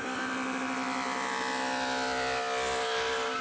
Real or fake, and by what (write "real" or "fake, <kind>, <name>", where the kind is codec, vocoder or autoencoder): real